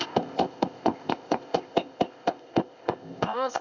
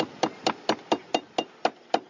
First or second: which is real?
second